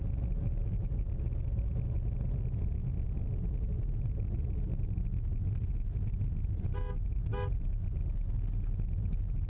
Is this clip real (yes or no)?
yes